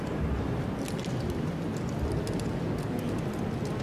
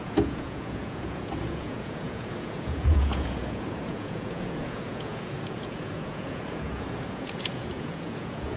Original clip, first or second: first